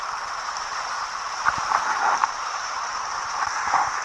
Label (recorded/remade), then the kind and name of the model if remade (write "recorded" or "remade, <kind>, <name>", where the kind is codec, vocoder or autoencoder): remade, vocoder, BigVGAN v2